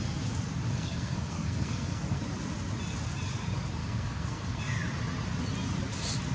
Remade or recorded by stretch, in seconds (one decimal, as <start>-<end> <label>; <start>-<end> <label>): 0.0-0.7 recorded; 0.7-2.2 remade; 2.2-3.8 recorded; 3.8-4.6 remade; 4.6-6.3 recorded